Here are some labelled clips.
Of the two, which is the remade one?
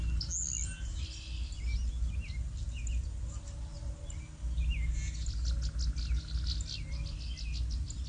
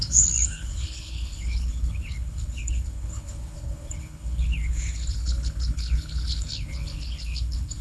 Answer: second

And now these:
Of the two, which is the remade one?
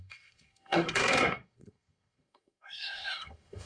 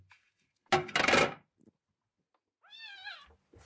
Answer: first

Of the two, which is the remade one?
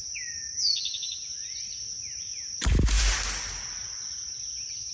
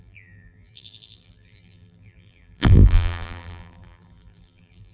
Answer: second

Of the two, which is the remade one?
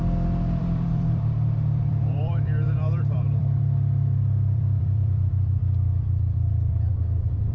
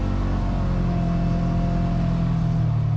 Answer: first